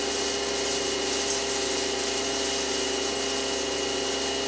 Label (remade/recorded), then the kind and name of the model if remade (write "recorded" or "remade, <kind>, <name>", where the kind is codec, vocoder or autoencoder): recorded